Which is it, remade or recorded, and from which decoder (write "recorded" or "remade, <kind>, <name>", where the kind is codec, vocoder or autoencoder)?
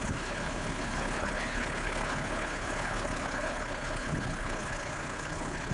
remade, codec, HILCodec